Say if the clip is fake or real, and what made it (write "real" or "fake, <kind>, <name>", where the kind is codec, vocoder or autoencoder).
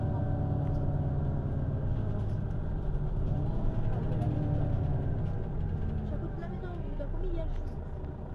real